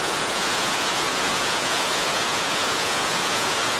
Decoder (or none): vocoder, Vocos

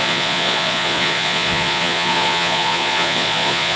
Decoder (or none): vocoder, Vocos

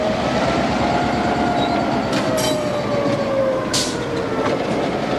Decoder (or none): none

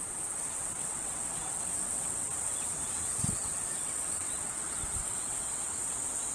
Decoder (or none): vocoder, WaveNeXt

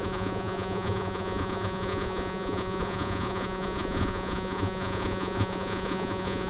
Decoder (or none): vocoder, Vocos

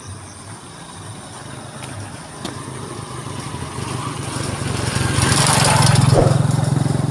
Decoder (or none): none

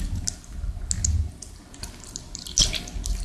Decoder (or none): none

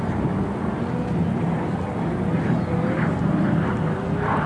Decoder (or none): none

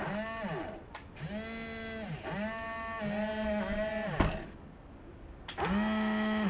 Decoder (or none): none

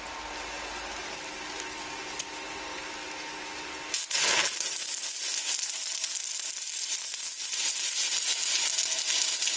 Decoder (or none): none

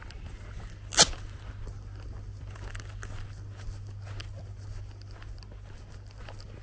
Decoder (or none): none